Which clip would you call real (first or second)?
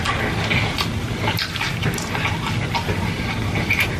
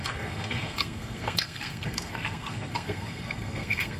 first